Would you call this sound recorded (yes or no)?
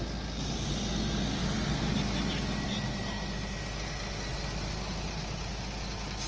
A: yes